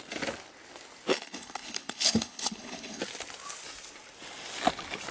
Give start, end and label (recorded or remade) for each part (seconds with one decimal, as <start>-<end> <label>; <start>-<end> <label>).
0.0-1.1 recorded; 1.1-3.0 remade; 3.0-5.1 recorded